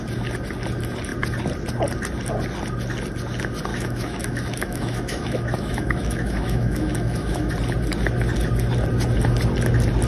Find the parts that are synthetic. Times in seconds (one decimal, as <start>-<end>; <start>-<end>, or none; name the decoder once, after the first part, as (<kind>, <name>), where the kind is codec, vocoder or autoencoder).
3.7-7.5 (autoencoder, DAC-VAE)